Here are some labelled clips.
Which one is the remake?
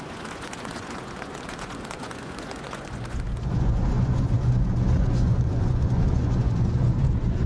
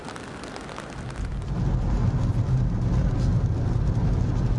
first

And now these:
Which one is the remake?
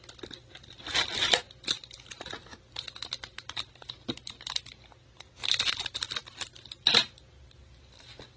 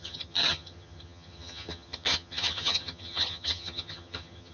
second